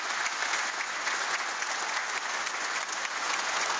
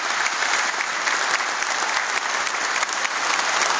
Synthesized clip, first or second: first